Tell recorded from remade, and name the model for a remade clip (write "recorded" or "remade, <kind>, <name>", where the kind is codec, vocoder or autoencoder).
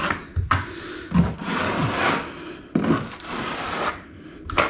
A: recorded